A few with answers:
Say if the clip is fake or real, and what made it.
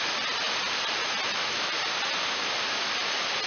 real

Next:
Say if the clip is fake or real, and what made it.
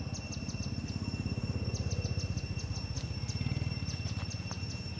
real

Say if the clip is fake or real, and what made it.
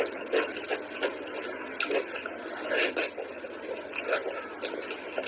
real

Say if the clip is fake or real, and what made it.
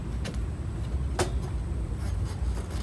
real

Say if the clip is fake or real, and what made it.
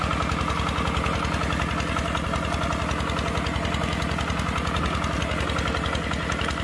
real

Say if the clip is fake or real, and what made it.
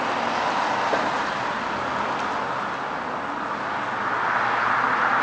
real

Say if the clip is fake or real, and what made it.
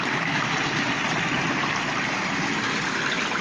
real